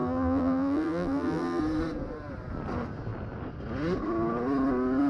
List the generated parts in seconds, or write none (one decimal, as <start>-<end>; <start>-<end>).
0.0-1.6